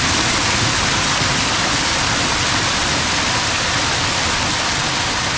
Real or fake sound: real